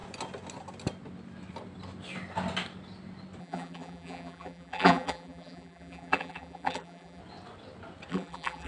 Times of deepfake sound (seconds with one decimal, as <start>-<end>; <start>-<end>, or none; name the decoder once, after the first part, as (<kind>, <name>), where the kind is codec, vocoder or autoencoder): 3.4-7.2 (vocoder, BigVGAN v2); 8.1-8.7